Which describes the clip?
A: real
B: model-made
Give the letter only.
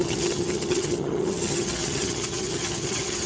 B